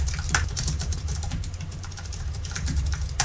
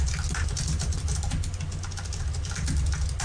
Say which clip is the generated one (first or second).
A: first